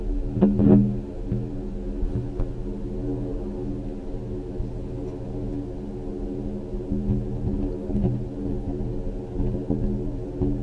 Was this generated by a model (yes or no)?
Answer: no